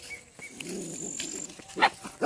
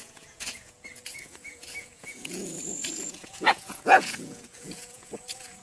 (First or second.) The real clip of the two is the first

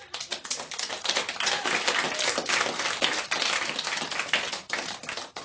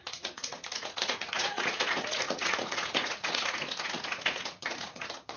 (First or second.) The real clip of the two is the first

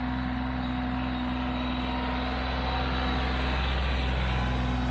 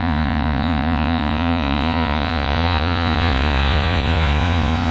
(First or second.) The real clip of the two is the first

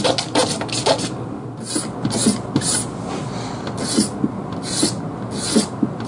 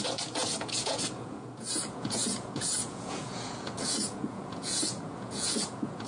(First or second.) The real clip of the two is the first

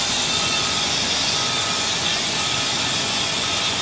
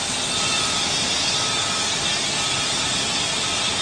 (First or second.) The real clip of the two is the second